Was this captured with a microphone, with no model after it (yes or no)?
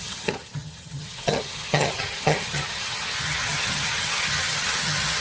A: no